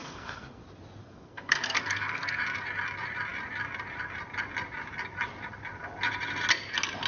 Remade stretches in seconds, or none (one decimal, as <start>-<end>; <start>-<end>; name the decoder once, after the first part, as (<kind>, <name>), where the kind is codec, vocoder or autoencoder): 0.0-0.6 (codec, SNAC); 1.0-2.4